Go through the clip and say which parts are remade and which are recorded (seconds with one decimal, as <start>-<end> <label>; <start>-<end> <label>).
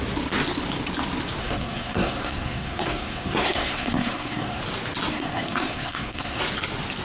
0.0-1.4 recorded; 1.4-4.6 remade; 4.6-5.1 recorded; 5.1-6.4 remade; 6.4-7.0 recorded